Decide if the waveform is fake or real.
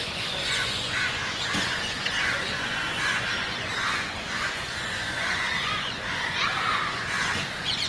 fake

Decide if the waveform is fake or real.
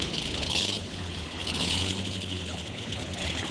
fake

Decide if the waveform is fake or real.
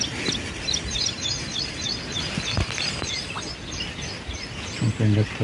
real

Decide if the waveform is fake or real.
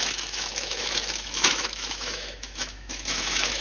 fake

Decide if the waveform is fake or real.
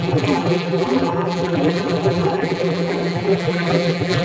fake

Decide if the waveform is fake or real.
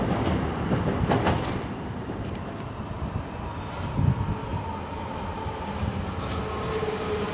real